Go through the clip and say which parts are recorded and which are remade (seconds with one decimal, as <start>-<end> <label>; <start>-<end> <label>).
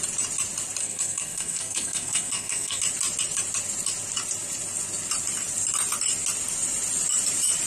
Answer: 0.0-0.8 recorded; 0.8-2.8 remade; 2.8-7.7 recorded